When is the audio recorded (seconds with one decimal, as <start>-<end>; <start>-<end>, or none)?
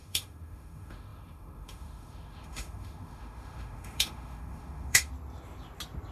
5.1-6.1